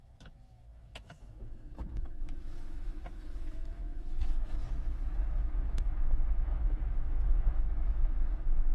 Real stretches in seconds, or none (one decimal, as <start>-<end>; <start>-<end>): 4.6-5.3